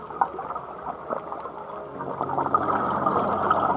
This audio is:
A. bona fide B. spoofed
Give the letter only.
A